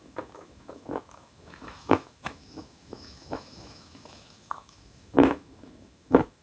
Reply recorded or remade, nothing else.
remade